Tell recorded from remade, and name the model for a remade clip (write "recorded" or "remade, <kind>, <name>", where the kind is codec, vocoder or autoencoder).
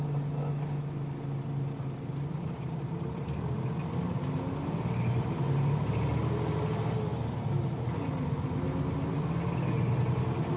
recorded